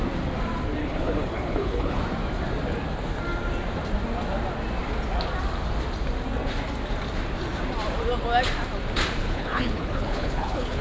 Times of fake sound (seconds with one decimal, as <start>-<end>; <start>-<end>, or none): 0.8-2.0; 9.2-10.8